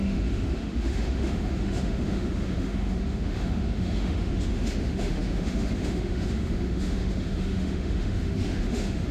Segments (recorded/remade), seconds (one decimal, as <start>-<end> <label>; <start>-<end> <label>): 0.0-9.1 remade